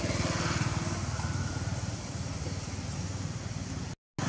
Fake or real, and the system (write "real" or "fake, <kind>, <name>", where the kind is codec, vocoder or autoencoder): real